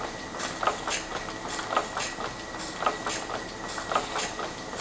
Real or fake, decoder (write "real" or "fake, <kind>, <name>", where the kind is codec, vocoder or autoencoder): real